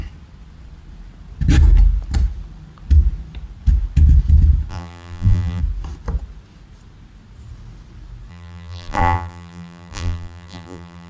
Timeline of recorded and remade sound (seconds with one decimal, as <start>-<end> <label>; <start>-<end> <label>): 0.0-4.7 recorded; 4.7-5.6 remade; 5.6-8.3 recorded; 8.3-11.1 remade